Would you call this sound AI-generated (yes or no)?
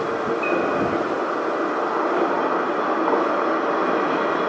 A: no